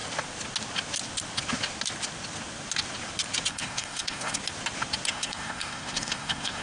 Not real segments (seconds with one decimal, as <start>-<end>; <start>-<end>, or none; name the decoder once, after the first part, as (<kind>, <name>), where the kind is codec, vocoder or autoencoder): 3.5-4.4 (codec, SNAC); 5.1-6.6